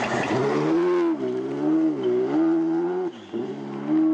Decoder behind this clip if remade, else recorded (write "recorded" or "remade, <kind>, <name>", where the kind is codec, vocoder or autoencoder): recorded